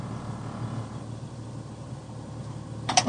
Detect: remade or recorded recorded